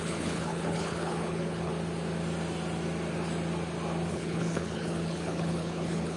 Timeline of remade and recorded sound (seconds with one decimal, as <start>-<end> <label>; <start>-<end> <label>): 0.0-1.7 remade; 1.7-4.1 recorded; 4.1-6.2 remade